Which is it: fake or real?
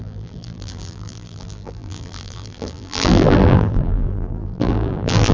fake